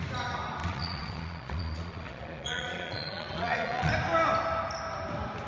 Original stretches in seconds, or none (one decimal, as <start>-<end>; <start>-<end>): 0.0-0.6; 3.9-5.5